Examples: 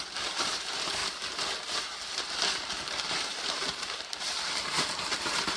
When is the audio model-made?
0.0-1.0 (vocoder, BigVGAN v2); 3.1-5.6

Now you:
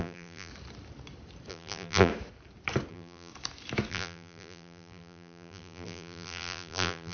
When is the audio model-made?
0.0-0.5 (vocoder, BigVGAN v2); 1.5-2.1; 2.9-3.3; 3.9-7.1